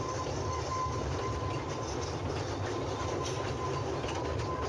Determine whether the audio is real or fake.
real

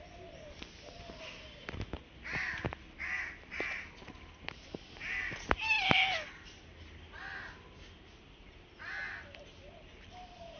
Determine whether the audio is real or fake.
real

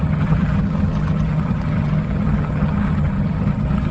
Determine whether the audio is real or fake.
fake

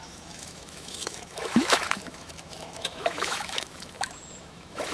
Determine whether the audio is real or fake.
fake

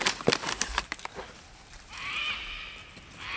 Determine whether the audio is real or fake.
fake